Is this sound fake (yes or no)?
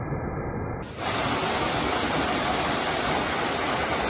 no